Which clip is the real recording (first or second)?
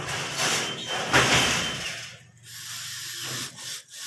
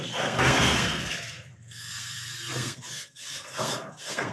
first